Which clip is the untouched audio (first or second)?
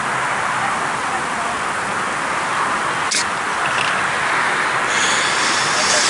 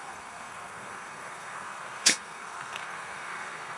first